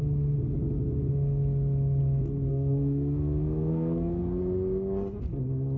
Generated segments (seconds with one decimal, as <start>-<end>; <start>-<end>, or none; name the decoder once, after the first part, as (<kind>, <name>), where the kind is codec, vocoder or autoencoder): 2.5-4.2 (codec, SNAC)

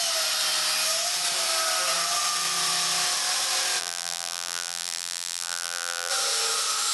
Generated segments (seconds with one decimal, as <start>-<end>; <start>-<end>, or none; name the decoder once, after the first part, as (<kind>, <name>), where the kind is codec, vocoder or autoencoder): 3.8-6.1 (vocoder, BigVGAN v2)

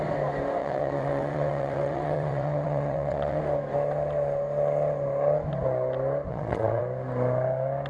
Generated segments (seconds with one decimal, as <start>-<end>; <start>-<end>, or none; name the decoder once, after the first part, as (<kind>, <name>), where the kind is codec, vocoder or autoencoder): 0.6-3.4 (vocoder, WaveNeXt); 6.3-6.8

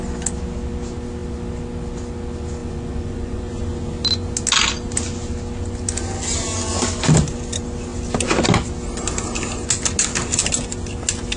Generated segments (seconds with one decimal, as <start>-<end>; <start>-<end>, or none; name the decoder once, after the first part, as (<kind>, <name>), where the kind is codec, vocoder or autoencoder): 2.6-3.6 (vocoder, Vocos)